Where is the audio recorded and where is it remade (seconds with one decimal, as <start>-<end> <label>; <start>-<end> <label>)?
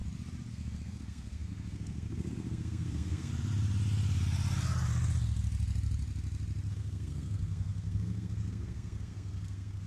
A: 0.0-0.5 recorded; 0.5-3.3 remade; 3.3-6.7 recorded; 6.7-9.9 remade